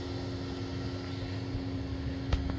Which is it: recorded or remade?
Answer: recorded